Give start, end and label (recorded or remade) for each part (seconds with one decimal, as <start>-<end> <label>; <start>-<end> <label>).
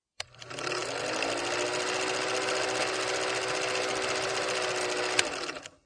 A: 0.0-5.9 recorded